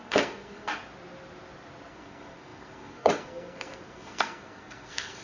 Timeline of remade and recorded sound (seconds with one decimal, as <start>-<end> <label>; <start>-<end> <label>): 0.0-0.7 remade; 0.7-1.9 recorded; 1.9-5.2 remade